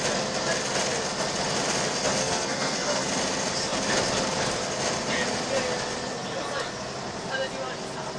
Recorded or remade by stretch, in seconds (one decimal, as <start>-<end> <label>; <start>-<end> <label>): 0.0-2.2 recorded; 2.2-3.1 remade; 3.1-8.2 recorded